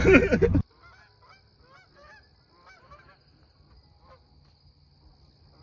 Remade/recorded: recorded